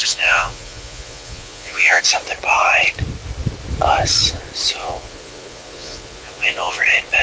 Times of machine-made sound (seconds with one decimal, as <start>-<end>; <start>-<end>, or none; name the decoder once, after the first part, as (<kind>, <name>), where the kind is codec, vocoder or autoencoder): 0.0-2.0 (vocoder, Vocos); 4.8-6.8